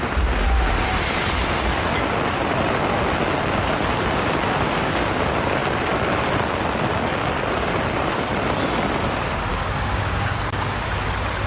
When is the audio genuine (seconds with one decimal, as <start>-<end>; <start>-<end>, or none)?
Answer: 0.0-9.5; 10.6-11.5